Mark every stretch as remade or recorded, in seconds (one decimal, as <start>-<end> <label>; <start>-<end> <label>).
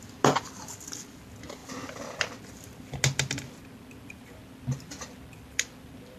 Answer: 0.0-6.2 recorded